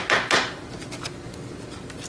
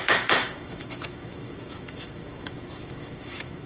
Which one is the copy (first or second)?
second